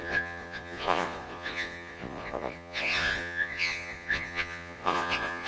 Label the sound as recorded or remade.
remade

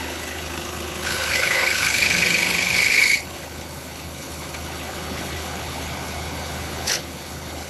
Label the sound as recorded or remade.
remade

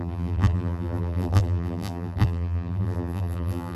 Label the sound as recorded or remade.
remade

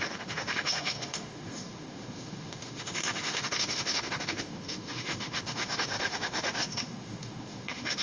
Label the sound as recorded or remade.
remade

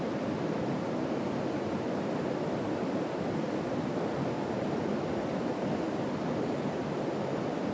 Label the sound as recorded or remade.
recorded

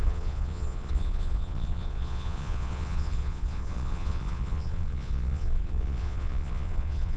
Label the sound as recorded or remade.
remade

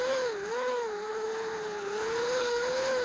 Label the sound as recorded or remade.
remade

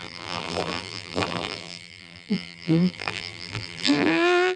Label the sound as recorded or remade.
remade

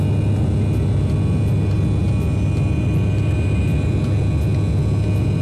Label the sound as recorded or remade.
recorded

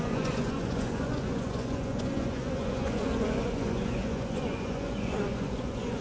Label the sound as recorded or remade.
remade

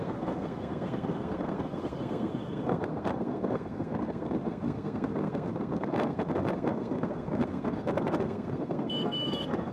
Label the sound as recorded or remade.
remade